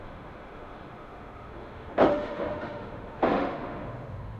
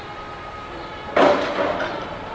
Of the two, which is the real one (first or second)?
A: second